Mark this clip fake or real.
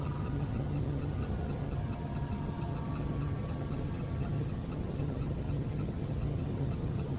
fake